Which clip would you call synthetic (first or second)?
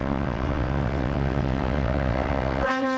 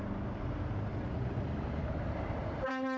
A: first